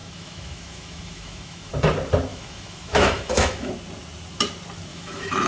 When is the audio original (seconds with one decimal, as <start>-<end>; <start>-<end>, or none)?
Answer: 1.7-2.3; 3.7-4.9